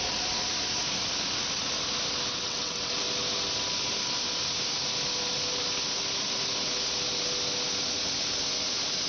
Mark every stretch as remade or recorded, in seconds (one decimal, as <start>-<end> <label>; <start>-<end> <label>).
0.0-2.3 recorded; 2.3-2.9 remade; 2.9-9.1 recorded